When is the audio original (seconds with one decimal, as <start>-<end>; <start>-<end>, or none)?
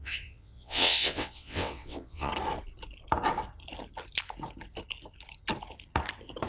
2.3-6.5